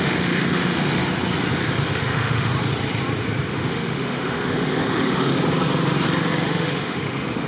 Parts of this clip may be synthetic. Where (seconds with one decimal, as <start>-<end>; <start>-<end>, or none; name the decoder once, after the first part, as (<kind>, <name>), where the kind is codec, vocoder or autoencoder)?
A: 0.0-1.0 (autoencoder, DAC-VAE); 1.9-2.5; 3.5-5.4; 6.2-7.5